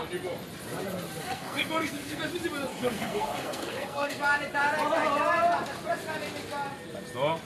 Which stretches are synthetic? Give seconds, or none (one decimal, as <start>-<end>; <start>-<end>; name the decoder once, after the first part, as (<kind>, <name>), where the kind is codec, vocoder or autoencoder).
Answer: 1.2-2.2 (codec, SNAC); 2.7-4.2